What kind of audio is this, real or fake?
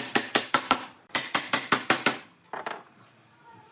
fake